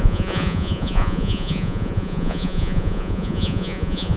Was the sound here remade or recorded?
remade